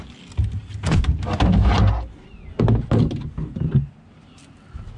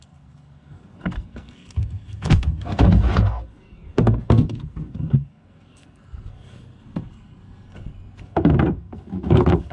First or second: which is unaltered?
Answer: first